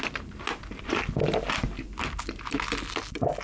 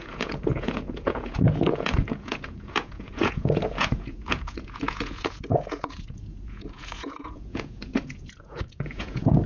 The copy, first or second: second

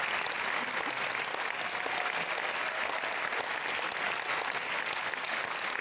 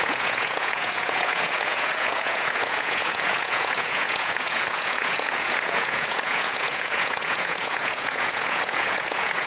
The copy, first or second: second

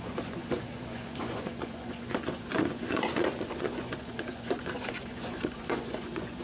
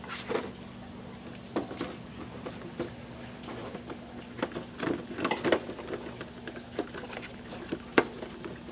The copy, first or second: first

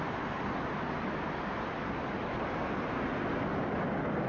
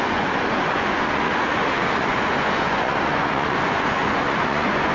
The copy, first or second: second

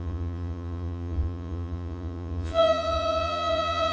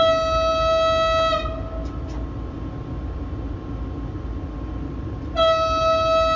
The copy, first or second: first